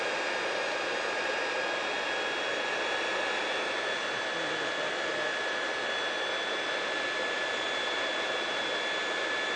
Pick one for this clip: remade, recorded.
recorded